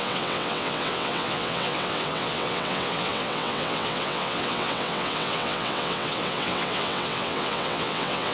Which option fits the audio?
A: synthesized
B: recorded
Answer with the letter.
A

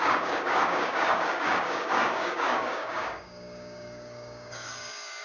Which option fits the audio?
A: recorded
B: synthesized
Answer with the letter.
B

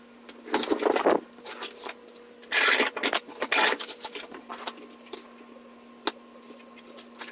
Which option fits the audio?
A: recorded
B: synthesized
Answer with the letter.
A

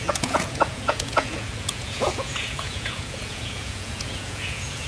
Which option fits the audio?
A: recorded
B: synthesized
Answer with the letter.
B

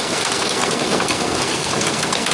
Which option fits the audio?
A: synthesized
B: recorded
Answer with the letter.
A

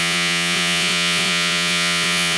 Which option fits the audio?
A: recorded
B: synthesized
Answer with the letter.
B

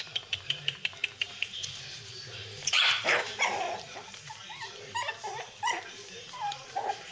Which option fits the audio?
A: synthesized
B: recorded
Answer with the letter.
A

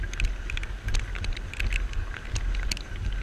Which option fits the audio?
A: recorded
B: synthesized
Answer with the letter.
A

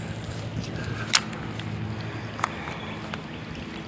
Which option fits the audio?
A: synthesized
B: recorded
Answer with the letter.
B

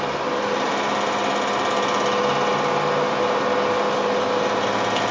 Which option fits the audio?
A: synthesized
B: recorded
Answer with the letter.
B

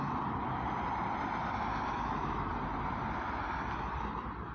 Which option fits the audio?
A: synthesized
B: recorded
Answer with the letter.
B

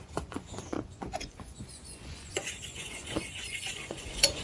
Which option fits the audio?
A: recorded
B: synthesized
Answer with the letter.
B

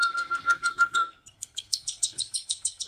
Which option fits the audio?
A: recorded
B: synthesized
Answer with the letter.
B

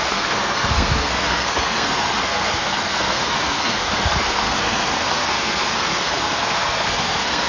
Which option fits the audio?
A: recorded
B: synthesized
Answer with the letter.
B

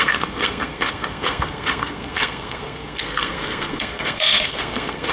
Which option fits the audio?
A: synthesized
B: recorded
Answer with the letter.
A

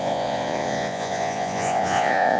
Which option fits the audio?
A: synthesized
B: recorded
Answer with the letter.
A